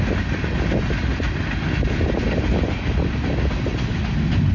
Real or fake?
real